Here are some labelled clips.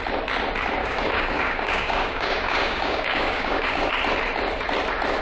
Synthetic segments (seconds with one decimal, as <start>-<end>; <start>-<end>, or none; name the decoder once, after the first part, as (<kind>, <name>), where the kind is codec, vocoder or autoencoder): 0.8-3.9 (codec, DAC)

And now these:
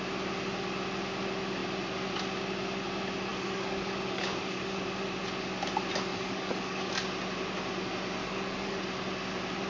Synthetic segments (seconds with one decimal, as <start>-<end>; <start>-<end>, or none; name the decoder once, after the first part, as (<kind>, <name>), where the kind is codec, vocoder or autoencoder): 3.3-4.8 (codec, DAC); 6.1-6.9; 8.2-8.8

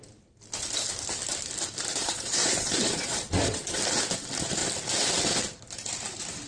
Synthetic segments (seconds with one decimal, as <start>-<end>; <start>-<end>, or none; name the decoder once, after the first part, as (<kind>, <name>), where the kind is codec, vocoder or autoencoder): 2.0-3.8 (vocoder, Vocos)

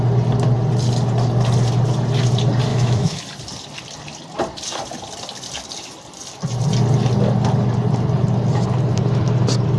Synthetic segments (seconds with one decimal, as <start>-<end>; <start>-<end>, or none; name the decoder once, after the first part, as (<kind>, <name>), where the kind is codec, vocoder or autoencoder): 2.7-3.2 (autoencoder, DAC-VAE)

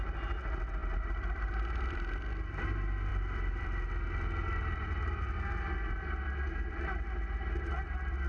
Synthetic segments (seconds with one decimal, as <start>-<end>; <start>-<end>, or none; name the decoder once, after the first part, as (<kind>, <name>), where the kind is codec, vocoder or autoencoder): 0.8-2.3 (vocoder, BigVGAN v2); 3.1-5.3

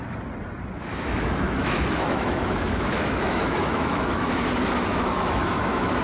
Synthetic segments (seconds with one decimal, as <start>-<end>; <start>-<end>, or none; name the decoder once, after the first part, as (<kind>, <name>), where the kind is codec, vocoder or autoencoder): 0.9-4.5 (autoencoder, DAC-VAE); 4.9-6.0